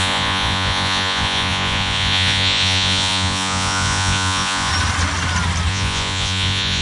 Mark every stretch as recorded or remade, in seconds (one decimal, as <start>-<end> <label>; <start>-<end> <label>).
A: 0.0-4.7 remade; 4.7-5.7 recorded; 5.7-6.8 remade